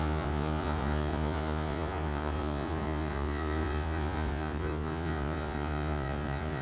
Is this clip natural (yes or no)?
no